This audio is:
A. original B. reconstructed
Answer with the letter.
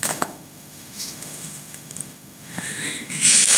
B